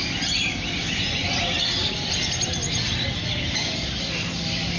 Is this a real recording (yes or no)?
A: yes